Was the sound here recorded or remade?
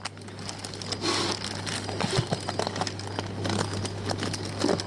recorded